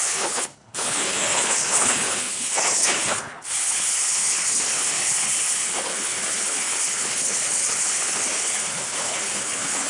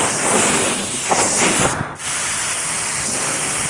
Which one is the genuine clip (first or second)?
second